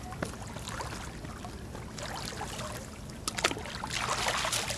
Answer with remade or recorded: recorded